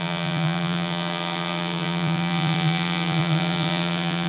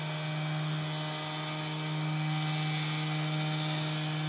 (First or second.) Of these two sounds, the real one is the second